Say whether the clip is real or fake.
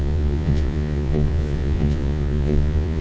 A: fake